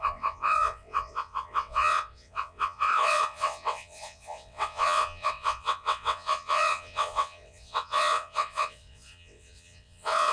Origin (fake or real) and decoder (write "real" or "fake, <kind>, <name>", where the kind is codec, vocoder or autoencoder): fake, vocoder, WaveNeXt